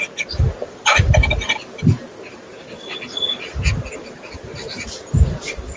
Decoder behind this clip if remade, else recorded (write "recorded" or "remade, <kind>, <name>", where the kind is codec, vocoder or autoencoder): recorded